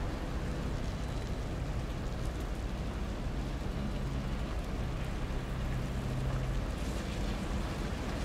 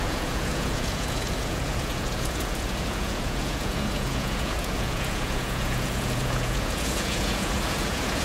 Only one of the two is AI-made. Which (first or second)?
second